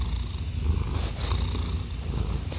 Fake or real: real